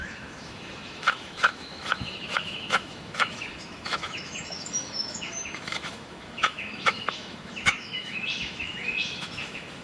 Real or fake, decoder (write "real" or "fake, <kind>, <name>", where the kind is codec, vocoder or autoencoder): fake, autoencoder, DAC-VAE